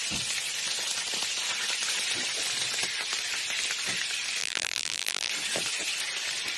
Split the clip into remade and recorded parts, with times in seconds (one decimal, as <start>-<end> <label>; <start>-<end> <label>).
0.0-4.4 recorded; 4.4-5.3 remade; 5.3-6.6 recorded